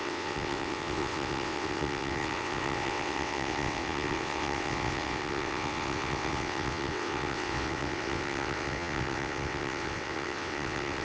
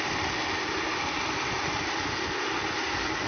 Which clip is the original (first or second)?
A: second